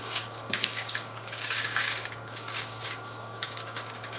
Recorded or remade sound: remade